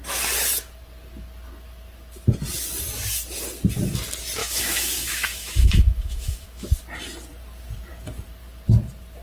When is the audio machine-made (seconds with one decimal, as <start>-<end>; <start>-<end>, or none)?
4.4-6.7

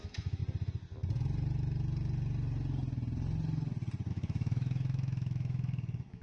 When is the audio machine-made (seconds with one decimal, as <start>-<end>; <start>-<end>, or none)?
0.0-0.4; 4.1-6.2

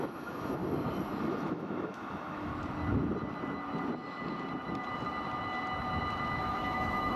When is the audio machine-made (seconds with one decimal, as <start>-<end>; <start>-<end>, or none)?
0.0-0.6; 1.2-2.5; 6.4-7.2

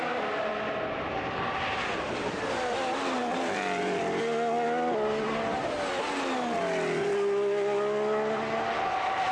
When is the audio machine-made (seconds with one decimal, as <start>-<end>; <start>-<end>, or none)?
none